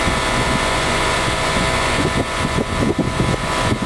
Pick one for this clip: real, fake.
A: fake